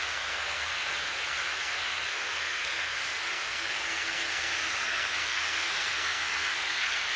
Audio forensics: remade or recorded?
remade